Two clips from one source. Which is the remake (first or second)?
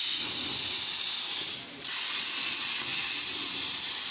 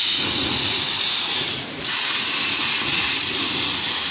second